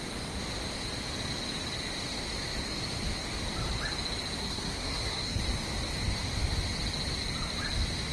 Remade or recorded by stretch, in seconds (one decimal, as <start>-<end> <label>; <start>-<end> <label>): 0.0-4.4 recorded; 4.4-5.4 remade; 5.4-8.1 recorded